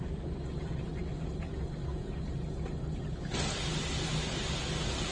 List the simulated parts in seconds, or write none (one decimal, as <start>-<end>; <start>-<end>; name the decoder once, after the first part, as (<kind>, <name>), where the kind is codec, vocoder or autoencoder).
none